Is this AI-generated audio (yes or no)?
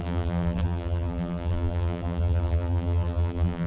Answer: yes